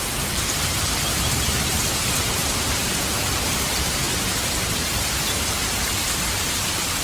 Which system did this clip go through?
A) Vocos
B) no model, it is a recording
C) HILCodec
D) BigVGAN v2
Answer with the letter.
D